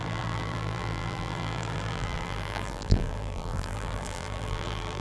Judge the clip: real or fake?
fake